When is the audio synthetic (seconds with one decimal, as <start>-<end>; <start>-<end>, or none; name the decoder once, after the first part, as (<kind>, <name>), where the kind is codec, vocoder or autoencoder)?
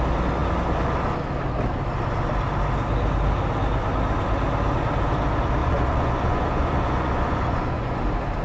5.6-8.0 (vocoder, Vocos)